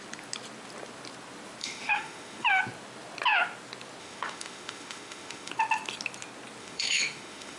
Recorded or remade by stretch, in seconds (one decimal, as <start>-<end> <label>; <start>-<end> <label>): 0.0-1.6 recorded; 1.6-2.6 remade; 2.6-4.0 recorded; 4.0-5.5 remade; 5.5-6.6 recorded; 6.6-7.6 remade